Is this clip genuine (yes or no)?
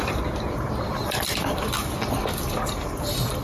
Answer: no